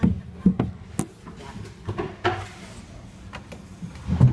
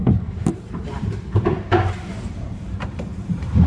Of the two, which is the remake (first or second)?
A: second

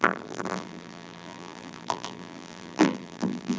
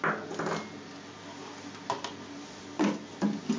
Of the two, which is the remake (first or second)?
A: first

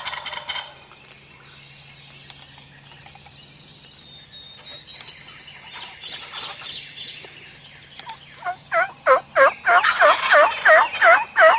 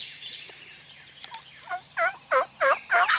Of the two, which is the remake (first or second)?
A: second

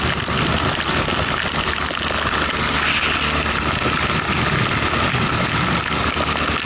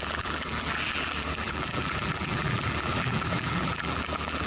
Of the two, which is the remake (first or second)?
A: second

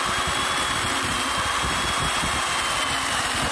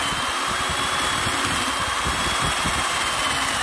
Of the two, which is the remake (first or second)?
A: second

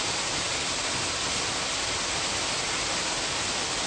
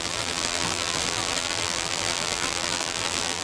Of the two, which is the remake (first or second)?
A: second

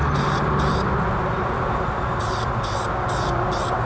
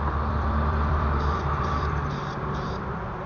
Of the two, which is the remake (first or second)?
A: second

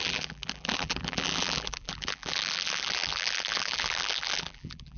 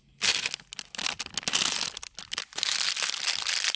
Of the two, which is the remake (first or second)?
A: first